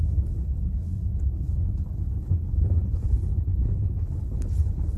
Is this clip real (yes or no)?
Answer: no